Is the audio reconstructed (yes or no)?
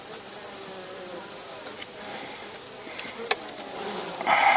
yes